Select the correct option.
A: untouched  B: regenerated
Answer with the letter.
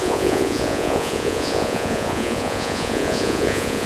B